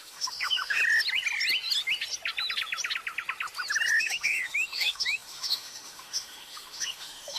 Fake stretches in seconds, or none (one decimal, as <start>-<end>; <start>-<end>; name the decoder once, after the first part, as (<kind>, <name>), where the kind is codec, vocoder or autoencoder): 0.0-0.8 (autoencoder, DAC-VAE); 4.0-7.4